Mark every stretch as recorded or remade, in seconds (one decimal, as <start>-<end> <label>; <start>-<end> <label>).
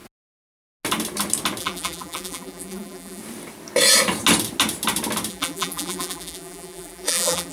0.0-1.6 recorded; 1.6-3.2 remade; 3.2-5.3 recorded; 5.3-7.5 remade